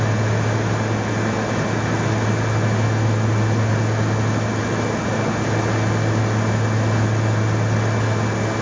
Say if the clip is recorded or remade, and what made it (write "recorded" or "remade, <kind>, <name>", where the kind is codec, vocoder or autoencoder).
recorded